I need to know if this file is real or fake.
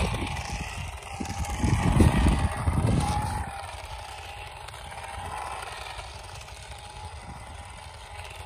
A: real